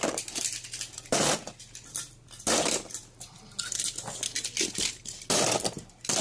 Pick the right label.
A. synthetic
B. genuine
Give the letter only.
B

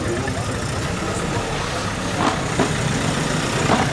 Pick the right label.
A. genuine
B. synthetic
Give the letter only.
A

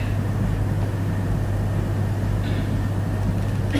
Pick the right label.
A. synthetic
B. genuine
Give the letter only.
B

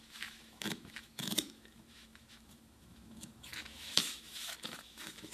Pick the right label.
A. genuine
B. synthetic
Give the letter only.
B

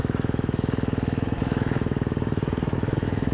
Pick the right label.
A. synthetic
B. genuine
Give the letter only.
A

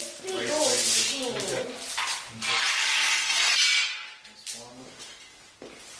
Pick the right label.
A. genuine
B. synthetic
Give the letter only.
A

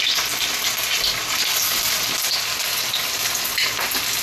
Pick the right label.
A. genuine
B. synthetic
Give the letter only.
A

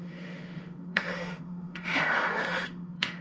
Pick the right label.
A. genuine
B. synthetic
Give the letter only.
B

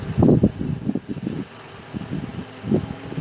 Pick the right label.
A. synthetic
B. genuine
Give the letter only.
B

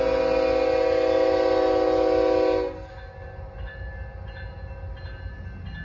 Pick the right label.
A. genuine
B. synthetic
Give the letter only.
A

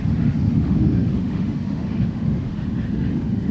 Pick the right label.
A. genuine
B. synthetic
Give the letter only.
B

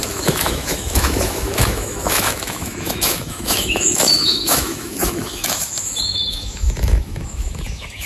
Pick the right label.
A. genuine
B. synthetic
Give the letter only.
B